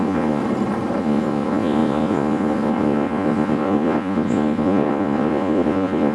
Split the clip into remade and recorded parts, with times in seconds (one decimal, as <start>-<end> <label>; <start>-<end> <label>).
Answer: 0.0-0.4 remade; 0.4-1.0 recorded; 1.0-6.1 remade